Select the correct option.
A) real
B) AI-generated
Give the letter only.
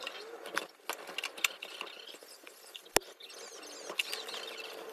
A